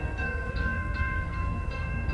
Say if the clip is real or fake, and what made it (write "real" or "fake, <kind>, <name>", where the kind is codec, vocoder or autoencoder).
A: fake, codec, SNAC